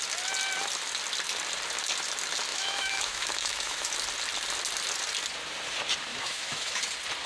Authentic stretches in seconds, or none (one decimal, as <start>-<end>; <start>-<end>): 0.0-2.5; 3.9-6.1; 6.8-7.3